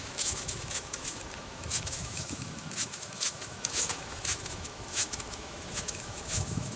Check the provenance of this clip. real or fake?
fake